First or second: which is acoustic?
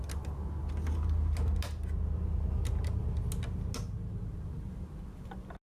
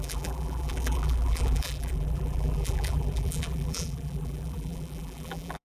first